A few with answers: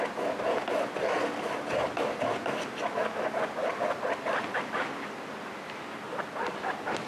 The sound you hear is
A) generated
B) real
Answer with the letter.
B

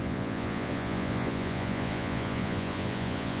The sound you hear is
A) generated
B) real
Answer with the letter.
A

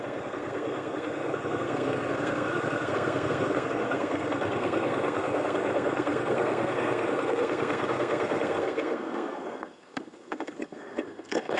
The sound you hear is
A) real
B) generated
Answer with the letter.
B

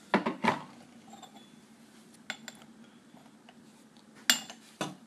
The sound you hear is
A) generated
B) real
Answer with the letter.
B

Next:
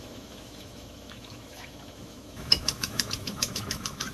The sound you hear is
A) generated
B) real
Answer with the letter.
A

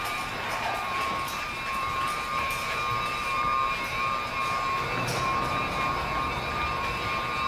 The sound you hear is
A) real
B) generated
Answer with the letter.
B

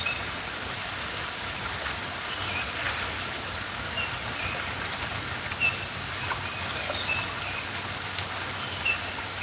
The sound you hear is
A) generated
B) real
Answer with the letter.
B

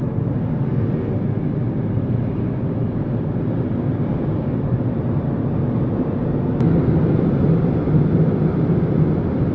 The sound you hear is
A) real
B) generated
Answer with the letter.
A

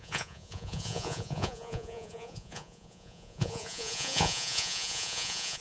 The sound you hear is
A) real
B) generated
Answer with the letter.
B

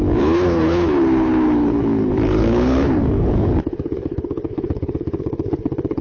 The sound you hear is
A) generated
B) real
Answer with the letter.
A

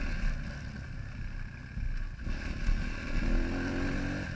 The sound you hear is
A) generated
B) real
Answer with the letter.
B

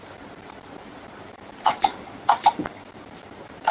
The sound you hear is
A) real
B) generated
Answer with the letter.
A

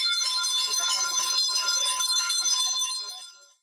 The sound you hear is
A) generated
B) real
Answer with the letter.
A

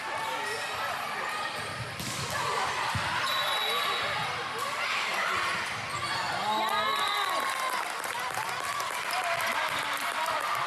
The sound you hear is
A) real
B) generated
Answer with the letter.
A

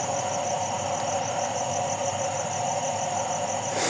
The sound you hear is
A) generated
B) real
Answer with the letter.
B